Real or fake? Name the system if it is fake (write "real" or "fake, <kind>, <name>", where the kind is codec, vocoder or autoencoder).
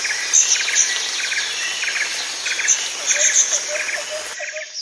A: real